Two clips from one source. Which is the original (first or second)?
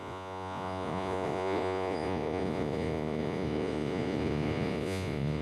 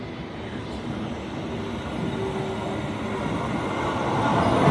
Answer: second